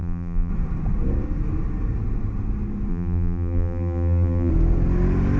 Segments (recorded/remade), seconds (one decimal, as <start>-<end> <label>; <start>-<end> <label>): 0.0-0.5 remade; 0.5-2.9 recorded; 2.9-4.5 remade; 4.5-5.4 recorded